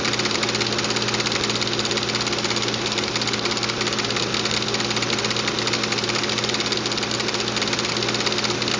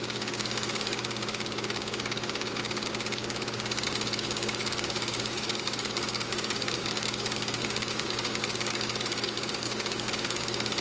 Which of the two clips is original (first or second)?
first